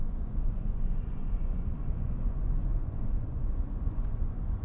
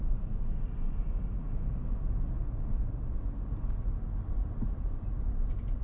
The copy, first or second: first